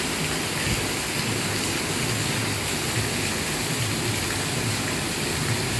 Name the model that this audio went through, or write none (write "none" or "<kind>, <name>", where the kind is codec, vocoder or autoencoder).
none